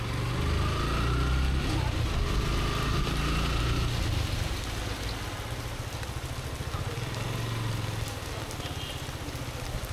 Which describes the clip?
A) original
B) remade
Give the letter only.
A